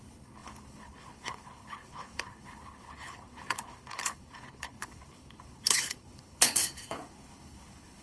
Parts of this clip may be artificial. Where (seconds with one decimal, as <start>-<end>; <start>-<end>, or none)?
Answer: 0.0-8.0